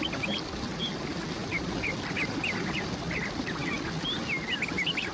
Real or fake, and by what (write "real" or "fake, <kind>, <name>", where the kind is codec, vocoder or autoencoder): real